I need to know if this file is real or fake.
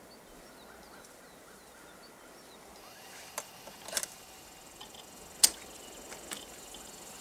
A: real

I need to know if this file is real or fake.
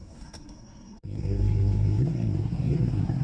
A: fake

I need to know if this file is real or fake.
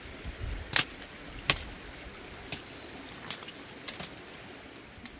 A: real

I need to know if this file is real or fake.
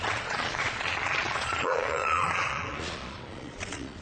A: fake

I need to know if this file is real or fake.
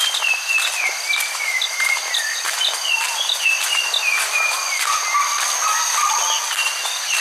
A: fake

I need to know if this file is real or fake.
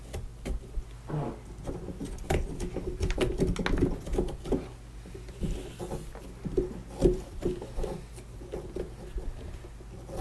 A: real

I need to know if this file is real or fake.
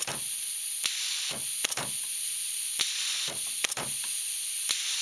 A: real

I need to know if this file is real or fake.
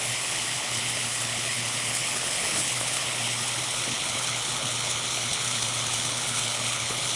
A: fake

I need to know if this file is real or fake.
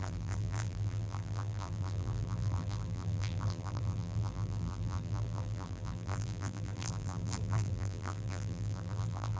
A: fake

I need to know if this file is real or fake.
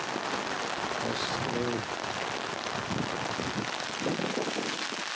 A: real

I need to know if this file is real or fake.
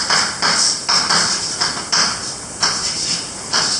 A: fake